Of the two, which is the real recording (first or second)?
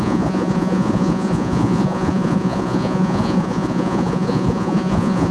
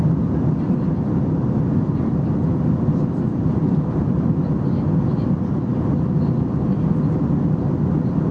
second